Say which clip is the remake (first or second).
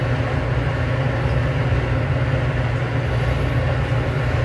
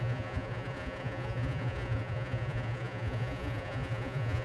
second